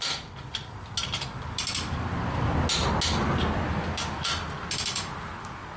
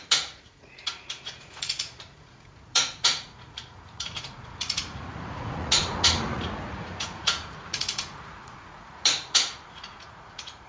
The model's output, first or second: second